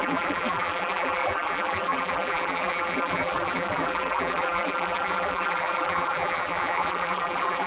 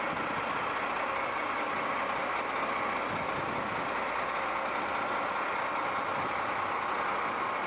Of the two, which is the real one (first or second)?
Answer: second